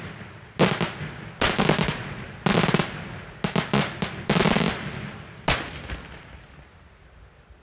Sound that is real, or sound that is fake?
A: real